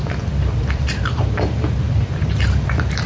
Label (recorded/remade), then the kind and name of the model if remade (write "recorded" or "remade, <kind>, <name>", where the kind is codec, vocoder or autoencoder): remade, vocoder, BigVGAN v2